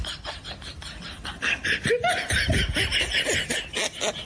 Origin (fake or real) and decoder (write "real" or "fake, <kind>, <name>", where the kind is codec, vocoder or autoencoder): real